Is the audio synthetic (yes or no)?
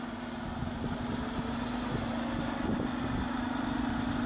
no